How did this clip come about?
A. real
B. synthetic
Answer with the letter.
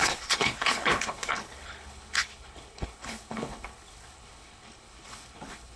B